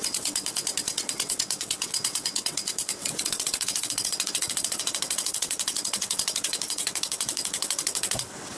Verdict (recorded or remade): remade